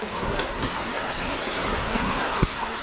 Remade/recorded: remade